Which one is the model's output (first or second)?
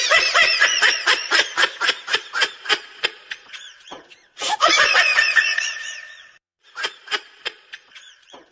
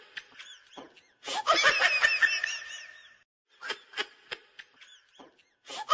first